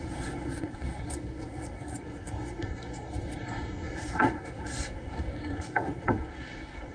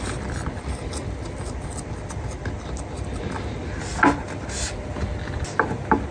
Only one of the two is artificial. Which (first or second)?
first